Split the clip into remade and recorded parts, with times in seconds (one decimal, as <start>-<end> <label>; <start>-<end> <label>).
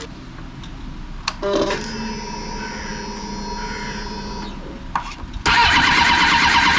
0.0-6.8 recorded